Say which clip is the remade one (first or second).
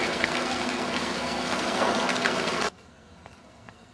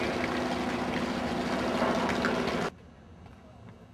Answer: first